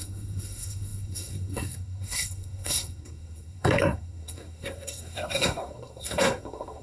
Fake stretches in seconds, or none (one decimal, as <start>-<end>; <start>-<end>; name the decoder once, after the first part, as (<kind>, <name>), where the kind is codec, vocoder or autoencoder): 0.0-6.8 (codec, SNAC)